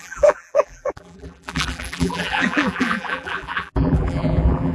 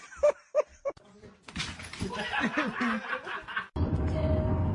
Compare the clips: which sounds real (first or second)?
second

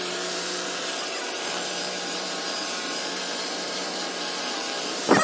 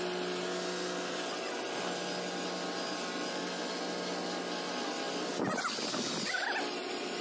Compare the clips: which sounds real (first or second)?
second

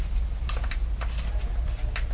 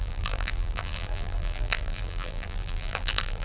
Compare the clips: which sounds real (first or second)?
first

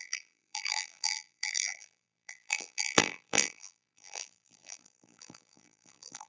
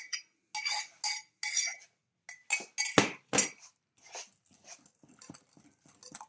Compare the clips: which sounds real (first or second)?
second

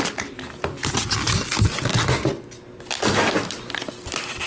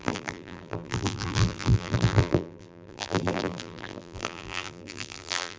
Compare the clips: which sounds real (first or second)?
first